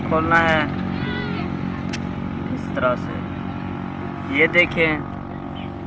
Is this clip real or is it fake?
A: real